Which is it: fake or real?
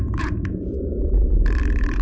fake